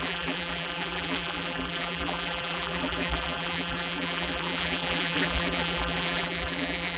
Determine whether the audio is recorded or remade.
remade